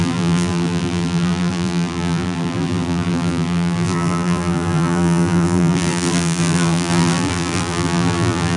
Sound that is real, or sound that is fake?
fake